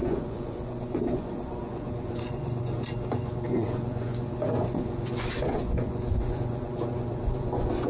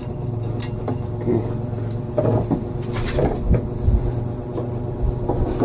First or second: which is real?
second